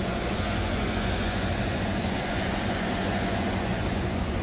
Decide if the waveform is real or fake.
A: fake